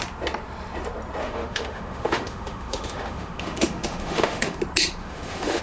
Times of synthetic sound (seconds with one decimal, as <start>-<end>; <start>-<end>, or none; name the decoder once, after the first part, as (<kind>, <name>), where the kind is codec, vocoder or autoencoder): 1.2-4.6 (autoencoder, DAC-VAE); 5.0-5.6